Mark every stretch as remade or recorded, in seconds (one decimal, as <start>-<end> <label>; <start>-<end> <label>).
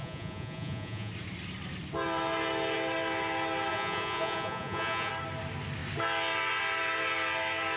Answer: 0.0-1.1 remade; 1.1-3.7 recorded; 3.7-5.1 remade; 5.1-7.8 recorded